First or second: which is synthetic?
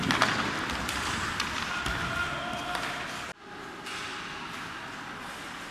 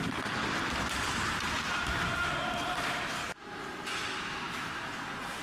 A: second